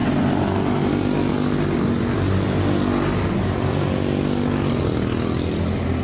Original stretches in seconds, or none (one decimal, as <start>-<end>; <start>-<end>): 0.0-6.0